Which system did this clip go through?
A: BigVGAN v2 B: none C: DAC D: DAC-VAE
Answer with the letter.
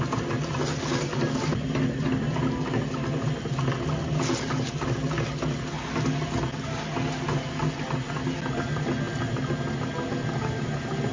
B